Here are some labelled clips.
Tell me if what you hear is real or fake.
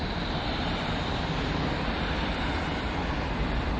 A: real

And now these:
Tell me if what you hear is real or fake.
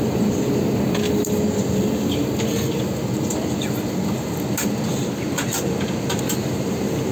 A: real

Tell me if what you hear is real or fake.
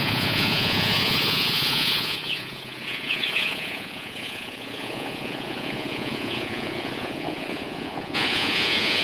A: fake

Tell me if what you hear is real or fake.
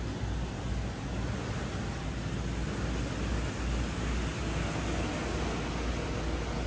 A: real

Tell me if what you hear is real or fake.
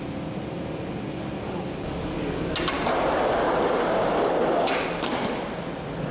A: real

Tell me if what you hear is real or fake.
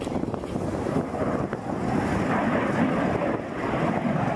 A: real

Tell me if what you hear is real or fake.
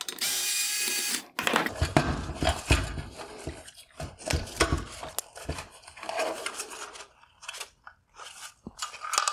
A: real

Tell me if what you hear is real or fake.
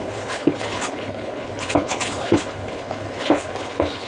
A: fake